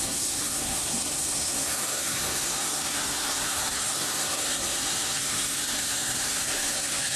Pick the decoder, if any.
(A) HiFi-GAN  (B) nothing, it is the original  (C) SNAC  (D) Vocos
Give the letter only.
C